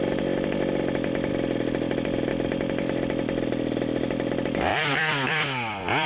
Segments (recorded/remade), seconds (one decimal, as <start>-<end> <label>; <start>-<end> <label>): 0.0-4.7 recorded; 4.7-6.1 remade